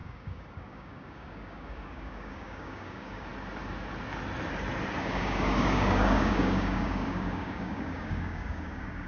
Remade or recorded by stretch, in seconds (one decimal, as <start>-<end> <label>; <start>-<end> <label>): 0.0-3.3 remade; 3.3-5.0 recorded; 5.0-9.1 remade